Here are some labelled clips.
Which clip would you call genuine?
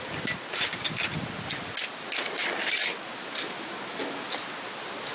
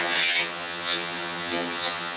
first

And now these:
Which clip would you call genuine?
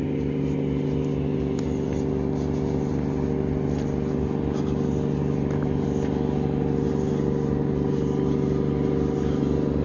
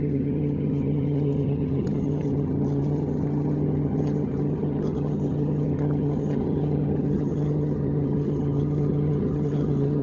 first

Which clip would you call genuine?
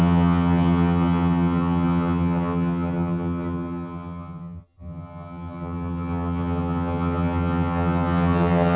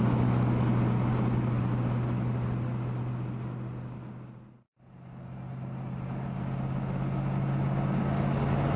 second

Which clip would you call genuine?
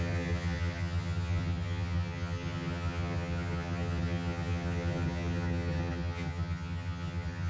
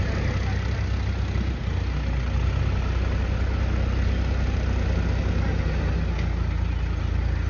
second